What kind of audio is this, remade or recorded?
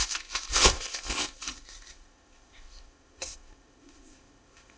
remade